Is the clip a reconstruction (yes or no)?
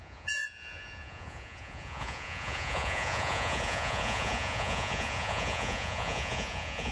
yes